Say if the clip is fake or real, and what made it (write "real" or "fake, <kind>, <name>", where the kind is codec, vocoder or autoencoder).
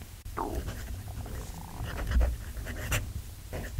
real